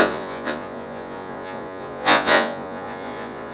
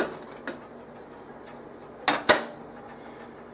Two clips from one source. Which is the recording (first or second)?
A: second